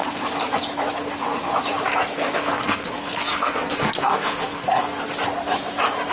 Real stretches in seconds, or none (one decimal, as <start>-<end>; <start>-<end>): 0.0-2.1; 5.0-6.1